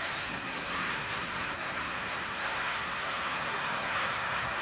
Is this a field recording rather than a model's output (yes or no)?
no